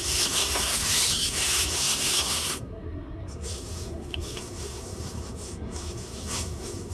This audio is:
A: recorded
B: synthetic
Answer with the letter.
B